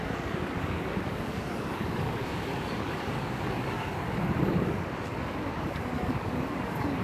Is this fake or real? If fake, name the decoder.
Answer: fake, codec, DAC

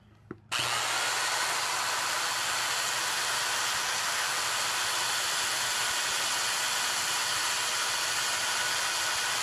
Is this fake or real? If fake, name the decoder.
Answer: real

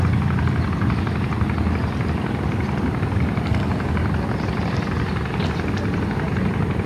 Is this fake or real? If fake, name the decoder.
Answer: real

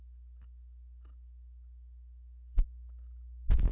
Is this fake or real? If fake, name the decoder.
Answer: real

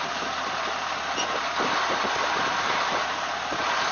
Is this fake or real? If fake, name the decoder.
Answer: real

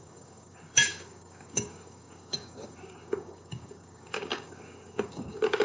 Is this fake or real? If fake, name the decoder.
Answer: fake, codec, DAC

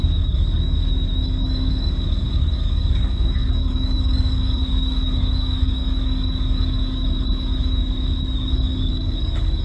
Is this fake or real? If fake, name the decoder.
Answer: fake, codec, DAC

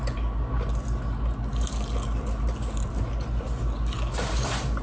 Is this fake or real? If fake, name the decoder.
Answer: real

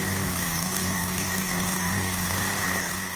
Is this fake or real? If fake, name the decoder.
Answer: fake, codec, DAC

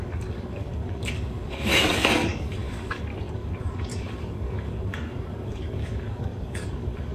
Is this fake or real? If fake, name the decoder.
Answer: fake, codec, DAC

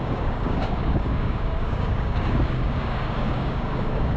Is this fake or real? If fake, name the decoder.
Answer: fake, codec, DAC